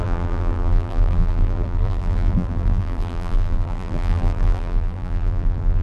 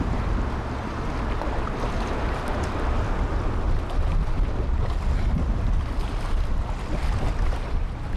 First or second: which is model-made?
first